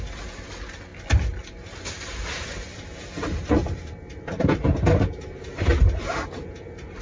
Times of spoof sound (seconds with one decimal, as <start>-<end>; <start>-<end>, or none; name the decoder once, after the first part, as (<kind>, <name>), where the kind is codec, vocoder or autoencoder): none